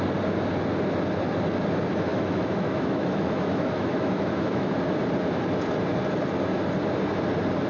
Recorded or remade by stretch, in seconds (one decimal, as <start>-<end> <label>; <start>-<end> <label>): 0.0-2.1 recorded; 2.1-4.7 remade; 4.7-7.7 recorded